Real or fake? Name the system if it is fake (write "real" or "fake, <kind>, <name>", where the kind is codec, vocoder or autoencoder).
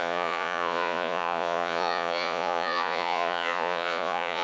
fake, vocoder, Vocos